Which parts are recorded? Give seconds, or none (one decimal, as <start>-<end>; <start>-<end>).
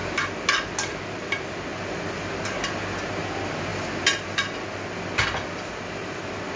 0.0-6.6